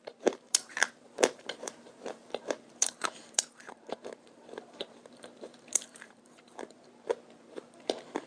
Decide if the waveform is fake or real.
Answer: fake